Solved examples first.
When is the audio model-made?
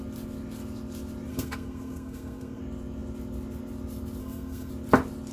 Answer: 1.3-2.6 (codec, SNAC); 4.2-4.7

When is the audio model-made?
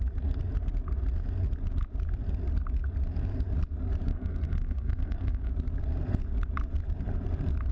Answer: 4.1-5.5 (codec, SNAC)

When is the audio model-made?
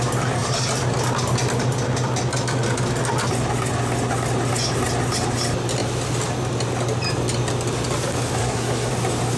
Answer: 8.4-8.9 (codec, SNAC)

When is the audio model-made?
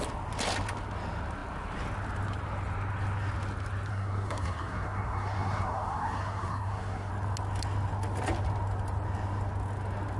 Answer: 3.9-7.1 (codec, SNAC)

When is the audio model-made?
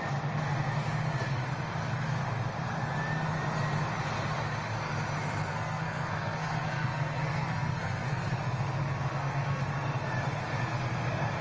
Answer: 5.5-8.3 (codec, SNAC); 9.1-9.6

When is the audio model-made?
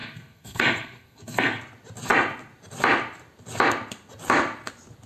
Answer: 0.0-1.6 (codec, SNAC)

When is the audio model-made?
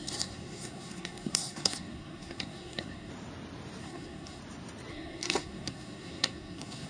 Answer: 0.0-3.1 (codec, SNAC); 3.8-4.4; 4.9-6.9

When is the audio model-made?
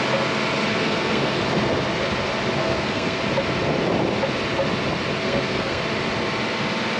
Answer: 0.7-1.4 (codec, SNAC); 2.6-3.2; 5.2-5.8